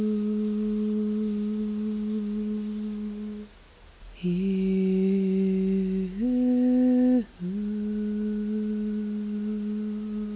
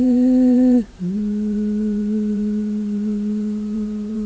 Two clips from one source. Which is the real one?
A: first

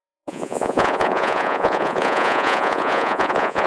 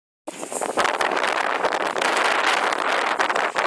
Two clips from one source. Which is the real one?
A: second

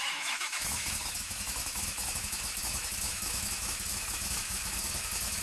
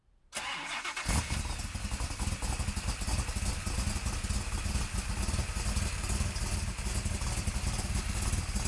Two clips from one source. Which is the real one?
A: second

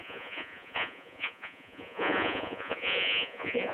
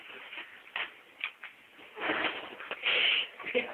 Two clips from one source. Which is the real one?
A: second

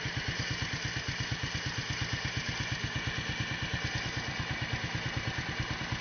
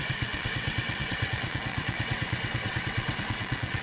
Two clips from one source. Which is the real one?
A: first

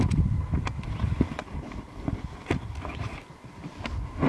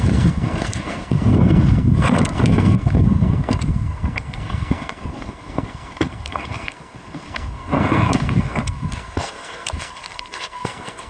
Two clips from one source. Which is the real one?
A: first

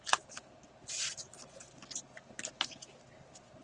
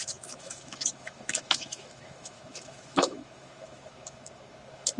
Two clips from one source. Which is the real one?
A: first